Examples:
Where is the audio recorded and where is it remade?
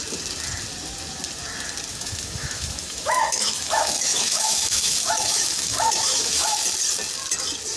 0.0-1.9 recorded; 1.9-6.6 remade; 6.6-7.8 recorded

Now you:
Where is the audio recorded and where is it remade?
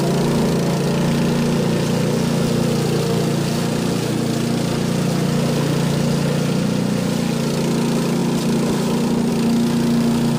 0.0-10.4 recorded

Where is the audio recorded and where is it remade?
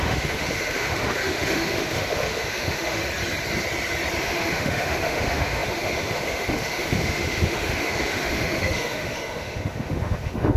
0.0-3.0 remade; 3.0-4.2 recorded; 4.2-10.6 remade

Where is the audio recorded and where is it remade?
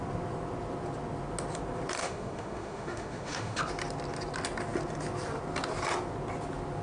0.0-2.0 recorded; 2.0-3.6 remade; 3.6-6.8 recorded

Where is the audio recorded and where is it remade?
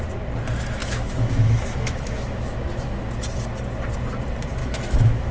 0.0-0.8 recorded; 0.8-3.1 remade; 3.1-4.6 recorded; 4.6-5.3 remade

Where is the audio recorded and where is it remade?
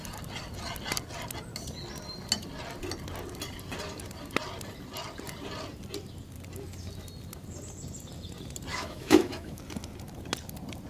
0.0-8.7 recorded; 8.7-9.6 remade; 9.6-10.9 recorded